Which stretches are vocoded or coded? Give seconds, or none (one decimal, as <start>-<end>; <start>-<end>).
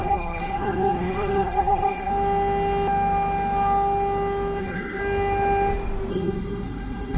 0.0-2.1; 4.6-5.0; 6.1-7.2